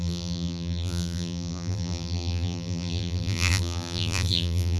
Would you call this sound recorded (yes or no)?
no